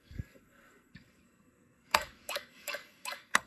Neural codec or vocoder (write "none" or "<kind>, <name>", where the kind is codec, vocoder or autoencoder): codec, SNAC